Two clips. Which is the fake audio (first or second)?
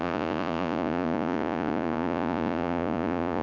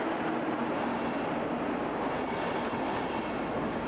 first